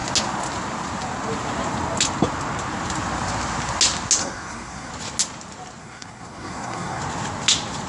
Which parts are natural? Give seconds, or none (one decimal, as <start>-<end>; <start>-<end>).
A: 0.0-4.2; 4.9-5.8; 7.0-7.9